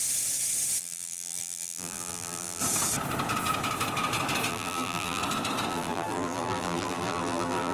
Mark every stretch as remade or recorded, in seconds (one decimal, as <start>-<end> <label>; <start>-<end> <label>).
0.0-0.8 recorded; 0.8-2.6 remade; 2.6-4.5 recorded; 4.5-5.2 remade; 5.2-5.7 recorded; 5.7-7.7 remade